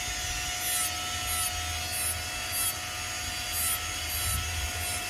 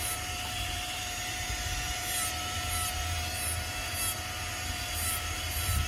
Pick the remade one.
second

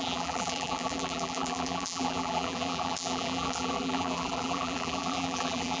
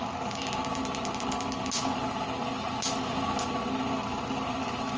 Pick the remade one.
first